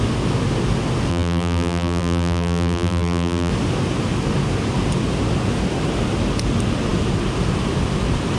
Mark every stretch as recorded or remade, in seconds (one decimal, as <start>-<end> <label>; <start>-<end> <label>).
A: 0.0-1.1 recorded; 1.1-3.5 remade; 3.5-8.4 recorded